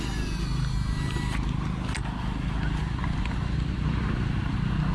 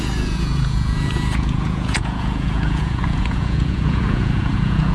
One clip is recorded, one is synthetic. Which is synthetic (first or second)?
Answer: second